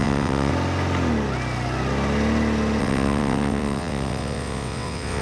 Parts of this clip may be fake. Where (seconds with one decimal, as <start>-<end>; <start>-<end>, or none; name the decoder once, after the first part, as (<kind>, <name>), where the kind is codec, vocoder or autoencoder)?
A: 0.0-0.5 (vocoder, WaveNeXt); 2.8-5.2